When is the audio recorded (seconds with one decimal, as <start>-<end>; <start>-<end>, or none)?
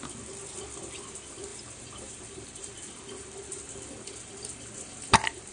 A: 0.0-1.5; 2.9-5.5